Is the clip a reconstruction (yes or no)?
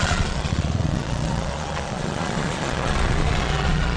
yes